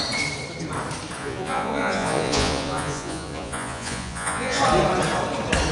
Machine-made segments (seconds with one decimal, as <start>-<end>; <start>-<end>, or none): 1.2-4.6